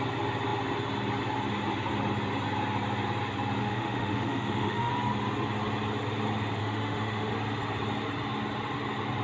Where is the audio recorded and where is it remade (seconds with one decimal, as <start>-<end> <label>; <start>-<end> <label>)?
0.0-3.6 recorded; 3.6-4.9 remade; 4.9-6.6 recorded; 6.6-7.3 remade; 7.3-9.2 recorded